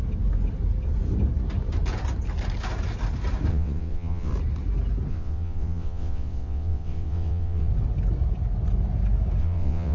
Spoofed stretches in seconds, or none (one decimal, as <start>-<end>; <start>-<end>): 3.5-4.3; 5.1-7.7; 9.4-9.9